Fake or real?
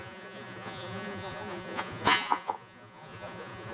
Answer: fake